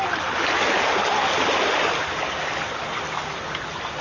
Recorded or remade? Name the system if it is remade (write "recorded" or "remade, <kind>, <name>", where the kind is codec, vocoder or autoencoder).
recorded